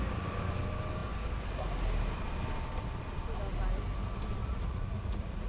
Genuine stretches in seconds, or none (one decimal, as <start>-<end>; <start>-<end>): 0.0-4.4